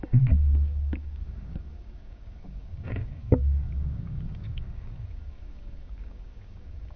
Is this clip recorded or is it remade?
remade